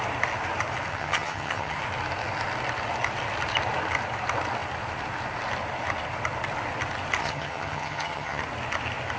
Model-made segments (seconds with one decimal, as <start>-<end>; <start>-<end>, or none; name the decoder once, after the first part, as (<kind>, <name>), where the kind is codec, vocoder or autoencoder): 0.9-1.8 (vocoder, HiFi-GAN); 7.2-8.4

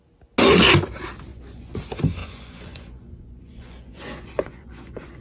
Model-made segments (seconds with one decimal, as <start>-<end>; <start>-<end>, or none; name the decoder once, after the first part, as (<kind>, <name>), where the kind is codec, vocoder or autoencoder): 1.3-1.8 (vocoder, Vocos); 2.2-5.2

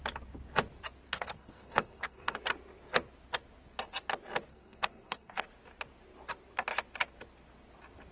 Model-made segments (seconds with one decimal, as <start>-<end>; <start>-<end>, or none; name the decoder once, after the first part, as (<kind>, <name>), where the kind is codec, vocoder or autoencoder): 1.1-2.4 (codec, SNAC); 4.5-5.4

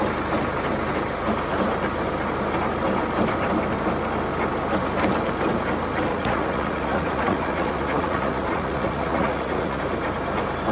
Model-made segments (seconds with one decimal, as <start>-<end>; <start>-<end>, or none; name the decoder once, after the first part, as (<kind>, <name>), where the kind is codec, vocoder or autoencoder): 6.1-9.8 (vocoder, Vocos)

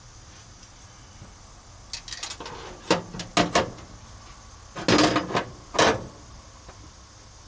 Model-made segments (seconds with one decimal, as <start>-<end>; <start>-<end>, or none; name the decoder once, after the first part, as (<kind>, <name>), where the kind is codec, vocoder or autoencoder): none

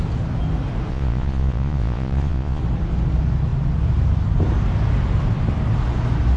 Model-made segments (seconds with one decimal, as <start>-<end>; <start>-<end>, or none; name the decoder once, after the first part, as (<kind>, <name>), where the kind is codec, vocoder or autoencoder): 0.9-2.6 (vocoder, Vocos)